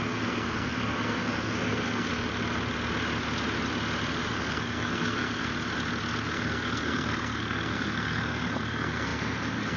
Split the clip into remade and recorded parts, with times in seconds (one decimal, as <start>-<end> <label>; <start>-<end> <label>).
0.0-2.1 remade; 2.1-4.3 recorded; 4.3-5.5 remade; 5.5-6.2 recorded; 6.2-9.8 remade